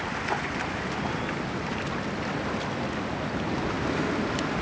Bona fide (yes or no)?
yes